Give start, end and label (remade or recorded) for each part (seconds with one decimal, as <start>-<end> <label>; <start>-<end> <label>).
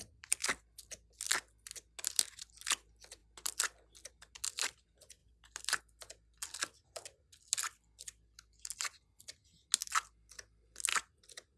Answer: 0.0-5.2 recorded; 5.2-5.8 remade; 5.8-11.6 recorded